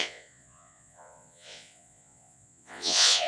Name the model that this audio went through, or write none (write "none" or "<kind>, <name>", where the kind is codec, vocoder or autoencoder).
vocoder, Vocos